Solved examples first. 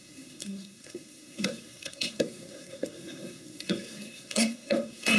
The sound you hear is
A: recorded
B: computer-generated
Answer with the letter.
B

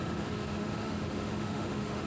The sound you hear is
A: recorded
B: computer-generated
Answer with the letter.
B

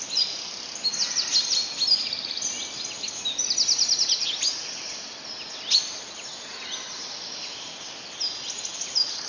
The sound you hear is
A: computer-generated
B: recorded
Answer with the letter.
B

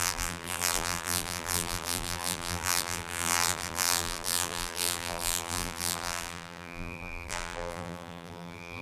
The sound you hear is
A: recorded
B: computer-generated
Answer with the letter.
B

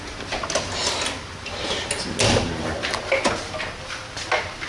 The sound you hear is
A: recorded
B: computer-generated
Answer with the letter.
A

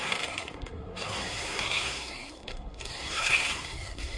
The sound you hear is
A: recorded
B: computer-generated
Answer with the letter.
B